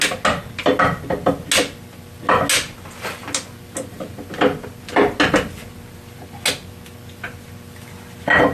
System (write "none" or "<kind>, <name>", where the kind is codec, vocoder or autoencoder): none